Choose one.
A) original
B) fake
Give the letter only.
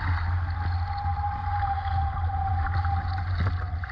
A